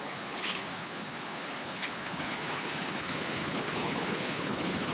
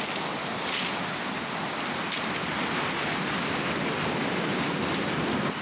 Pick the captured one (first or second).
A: second